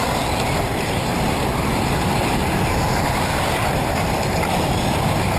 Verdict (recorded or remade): recorded